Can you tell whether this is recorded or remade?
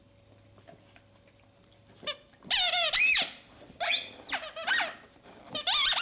recorded